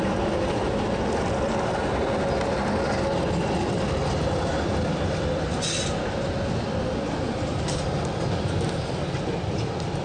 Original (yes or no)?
yes